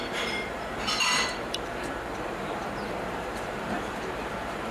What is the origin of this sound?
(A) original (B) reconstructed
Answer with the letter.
B